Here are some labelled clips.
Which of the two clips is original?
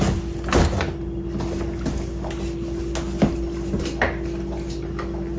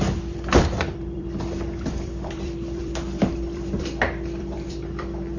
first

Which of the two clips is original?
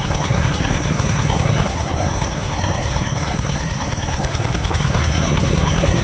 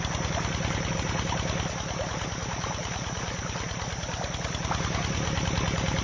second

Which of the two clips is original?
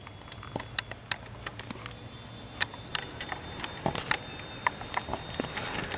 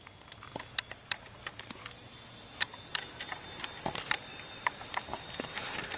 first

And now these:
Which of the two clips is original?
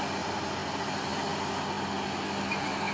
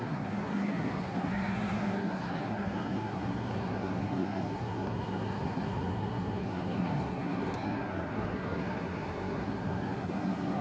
first